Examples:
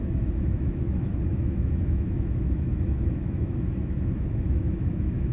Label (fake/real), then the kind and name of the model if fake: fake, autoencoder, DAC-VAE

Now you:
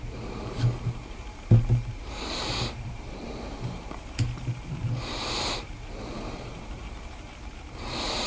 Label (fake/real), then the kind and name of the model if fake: fake, vocoder, BigVGAN v2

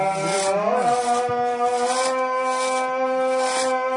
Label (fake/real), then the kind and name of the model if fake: real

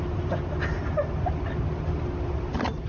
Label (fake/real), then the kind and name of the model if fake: real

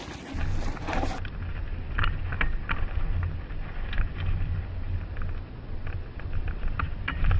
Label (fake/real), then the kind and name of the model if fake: real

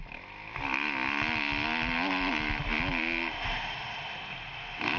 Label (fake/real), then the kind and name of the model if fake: real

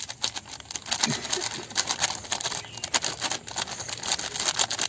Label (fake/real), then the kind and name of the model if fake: real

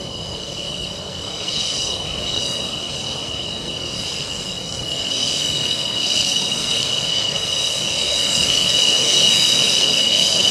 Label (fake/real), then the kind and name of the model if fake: fake, codec, SNAC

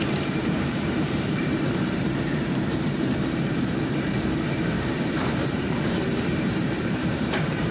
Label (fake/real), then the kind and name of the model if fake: fake, vocoder, BigVGAN v2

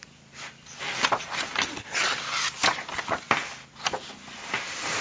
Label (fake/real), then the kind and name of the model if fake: real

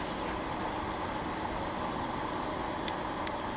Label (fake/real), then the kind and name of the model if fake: real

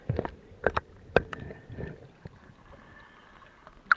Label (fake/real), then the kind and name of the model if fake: real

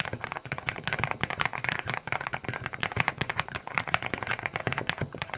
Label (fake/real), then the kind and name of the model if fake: fake, vocoder, Vocos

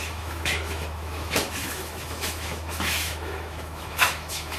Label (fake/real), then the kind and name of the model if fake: fake, autoencoder, DAC-VAE